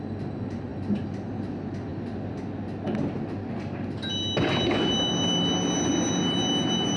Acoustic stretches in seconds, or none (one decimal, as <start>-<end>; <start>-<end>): 0.0-7.0